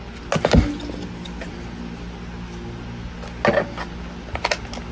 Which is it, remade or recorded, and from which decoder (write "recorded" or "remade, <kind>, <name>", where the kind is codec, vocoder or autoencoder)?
recorded